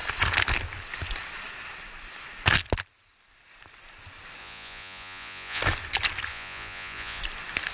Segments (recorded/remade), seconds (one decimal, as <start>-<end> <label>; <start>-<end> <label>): 0.0-4.4 recorded; 4.4-5.6 remade; 5.6-6.3 recorded; 6.3-7.2 remade; 7.2-7.7 recorded